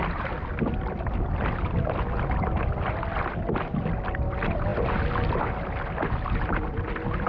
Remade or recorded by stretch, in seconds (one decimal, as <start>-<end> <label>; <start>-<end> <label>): 0.0-7.3 recorded